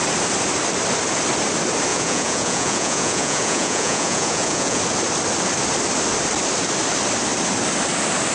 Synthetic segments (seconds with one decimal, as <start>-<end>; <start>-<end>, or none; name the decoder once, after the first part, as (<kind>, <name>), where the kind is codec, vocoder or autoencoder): 1.9-4.8 (vocoder, Vocos)